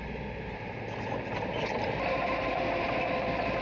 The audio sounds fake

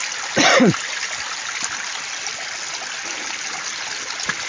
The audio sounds real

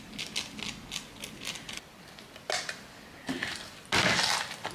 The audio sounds real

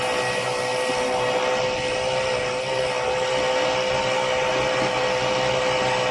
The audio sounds real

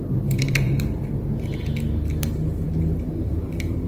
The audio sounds fake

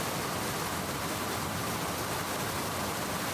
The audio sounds real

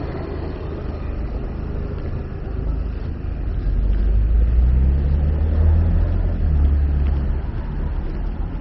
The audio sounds real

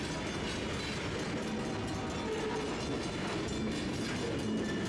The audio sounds real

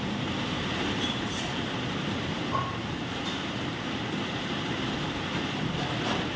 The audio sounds fake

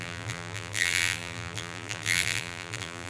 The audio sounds fake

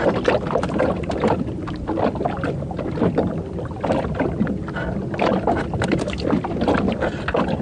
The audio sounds real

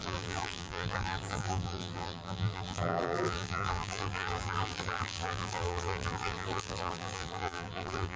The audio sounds fake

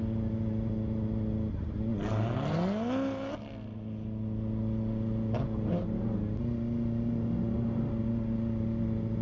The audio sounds real